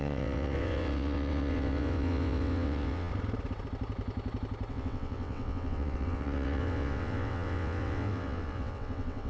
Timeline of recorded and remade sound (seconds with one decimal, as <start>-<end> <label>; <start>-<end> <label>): 0.0-3.1 remade; 3.1-4.7 recorded; 4.7-9.3 remade